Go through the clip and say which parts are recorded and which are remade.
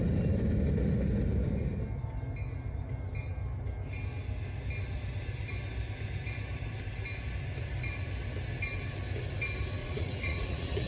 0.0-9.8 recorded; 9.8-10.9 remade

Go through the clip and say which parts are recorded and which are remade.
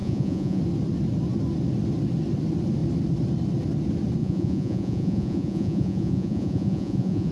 0.0-0.6 remade; 0.6-4.2 recorded; 4.2-7.3 remade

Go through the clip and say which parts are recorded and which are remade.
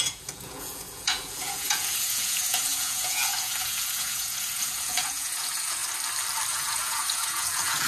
0.0-5.8 remade; 5.8-6.5 recorded; 6.5-7.9 remade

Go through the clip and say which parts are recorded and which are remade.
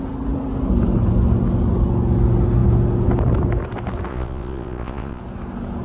0.0-4.1 recorded; 4.1-5.2 remade; 5.2-5.8 recorded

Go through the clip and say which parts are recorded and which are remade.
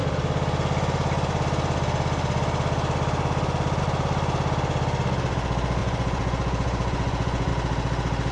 0.0-5.8 recorded; 5.8-7.5 remade; 7.5-8.3 recorded